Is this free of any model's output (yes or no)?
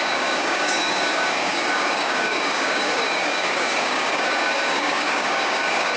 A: no